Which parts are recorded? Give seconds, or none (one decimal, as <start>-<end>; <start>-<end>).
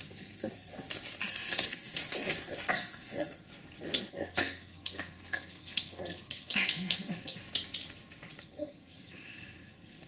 0.7-1.3; 2.0-2.7; 3.5-4.1; 7.4-8.4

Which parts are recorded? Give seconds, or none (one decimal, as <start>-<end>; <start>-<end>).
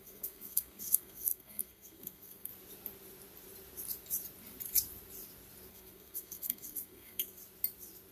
2.5-5.7; 7.4-8.1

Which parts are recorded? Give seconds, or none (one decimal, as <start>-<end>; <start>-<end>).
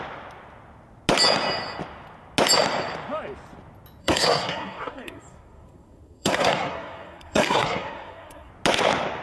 0.0-4.0; 8.5-9.2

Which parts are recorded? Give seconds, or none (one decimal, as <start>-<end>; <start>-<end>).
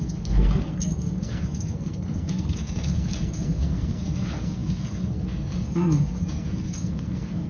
none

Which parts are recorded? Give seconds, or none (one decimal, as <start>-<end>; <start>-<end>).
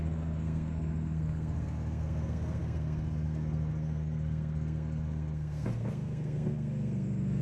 none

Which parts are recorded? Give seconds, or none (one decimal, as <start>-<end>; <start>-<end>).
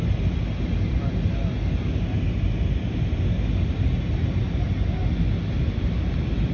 0.0-6.5